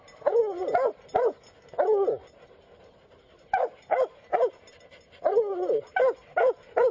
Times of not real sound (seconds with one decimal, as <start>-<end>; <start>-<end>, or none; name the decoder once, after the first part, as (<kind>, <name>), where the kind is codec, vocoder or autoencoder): none